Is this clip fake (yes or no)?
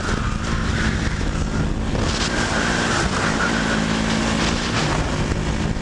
no